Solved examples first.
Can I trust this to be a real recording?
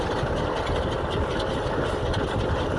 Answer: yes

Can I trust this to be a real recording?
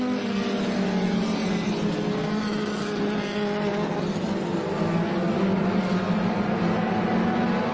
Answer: yes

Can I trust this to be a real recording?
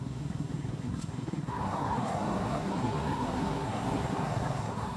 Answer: no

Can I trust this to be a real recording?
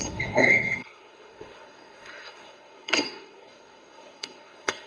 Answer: no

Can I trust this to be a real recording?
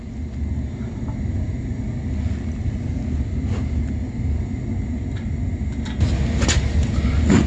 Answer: yes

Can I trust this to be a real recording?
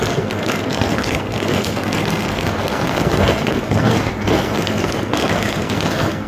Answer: no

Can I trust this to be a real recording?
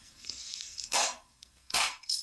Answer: no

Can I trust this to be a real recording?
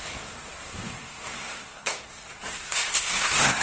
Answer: no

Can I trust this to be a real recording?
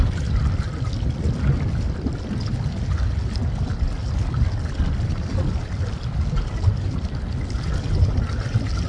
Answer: yes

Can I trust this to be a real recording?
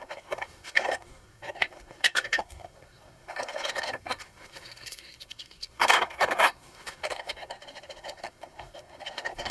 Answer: no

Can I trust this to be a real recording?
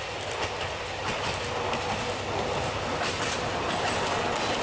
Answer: yes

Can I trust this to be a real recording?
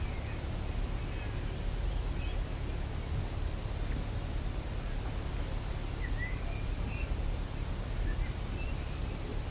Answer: yes